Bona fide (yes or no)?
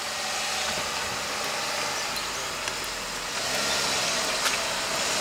yes